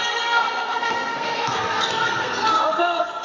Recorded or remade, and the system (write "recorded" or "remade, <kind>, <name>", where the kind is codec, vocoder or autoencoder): remade, codec, SNAC